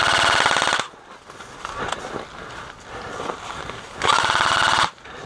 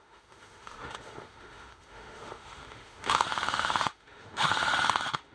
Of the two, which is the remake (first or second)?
second